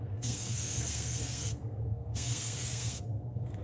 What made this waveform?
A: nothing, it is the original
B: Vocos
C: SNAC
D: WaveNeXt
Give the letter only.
C